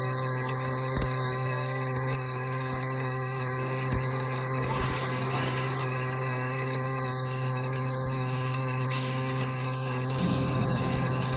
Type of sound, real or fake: fake